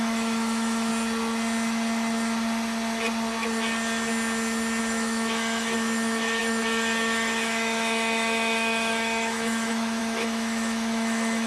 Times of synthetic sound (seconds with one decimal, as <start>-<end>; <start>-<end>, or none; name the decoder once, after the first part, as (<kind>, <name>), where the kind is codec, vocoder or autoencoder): 0.0-0.9 (autoencoder, DAC-VAE); 4.8-11.5